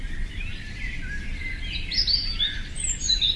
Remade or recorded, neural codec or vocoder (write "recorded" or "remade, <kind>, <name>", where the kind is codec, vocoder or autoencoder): recorded